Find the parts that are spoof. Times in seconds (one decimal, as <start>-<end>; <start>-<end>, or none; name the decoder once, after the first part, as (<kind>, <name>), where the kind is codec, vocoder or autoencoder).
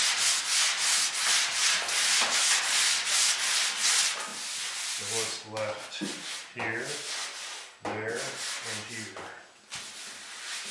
none